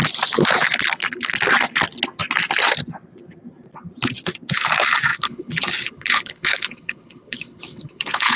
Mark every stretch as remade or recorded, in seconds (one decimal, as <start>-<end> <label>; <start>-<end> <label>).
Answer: 0.0-5.1 recorded; 5.1-8.4 remade